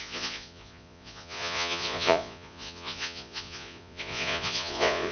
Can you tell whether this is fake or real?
fake